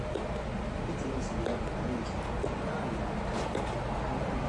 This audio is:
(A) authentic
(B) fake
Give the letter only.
A